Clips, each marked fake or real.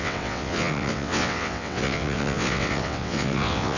fake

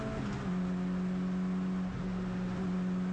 real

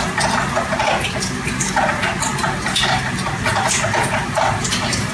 real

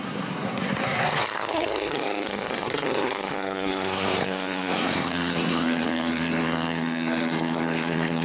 fake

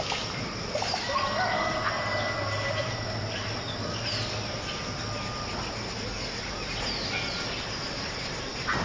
real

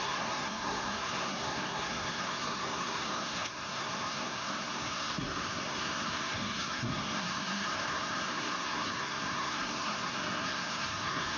fake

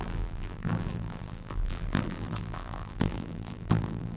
fake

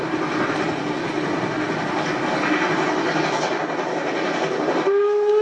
real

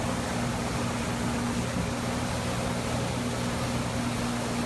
real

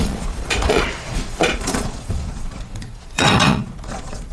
fake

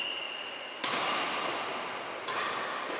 real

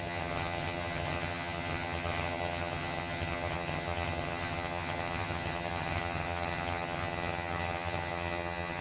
fake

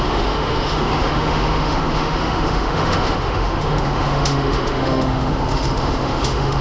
fake